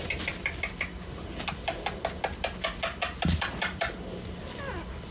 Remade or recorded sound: recorded